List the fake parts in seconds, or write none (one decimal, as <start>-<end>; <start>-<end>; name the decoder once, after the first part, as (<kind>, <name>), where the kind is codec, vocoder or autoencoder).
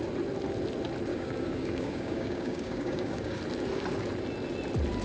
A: 1.1-3.4 (codec, DAC)